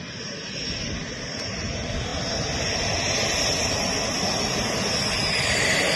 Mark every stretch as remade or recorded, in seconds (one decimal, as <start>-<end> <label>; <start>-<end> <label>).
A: 0.0-6.0 recorded

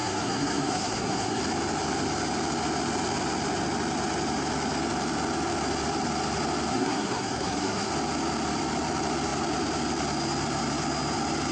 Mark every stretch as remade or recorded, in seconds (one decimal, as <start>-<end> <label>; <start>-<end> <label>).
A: 0.0-1.4 remade; 1.4-6.7 recorded; 6.7-7.9 remade; 7.9-11.5 recorded